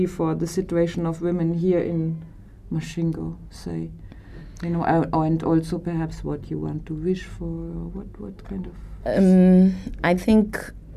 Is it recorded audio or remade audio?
recorded